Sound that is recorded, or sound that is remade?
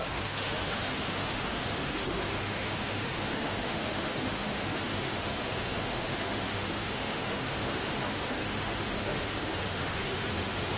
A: remade